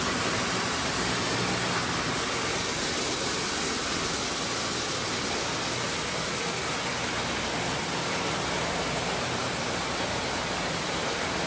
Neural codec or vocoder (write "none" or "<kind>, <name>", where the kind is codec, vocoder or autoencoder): none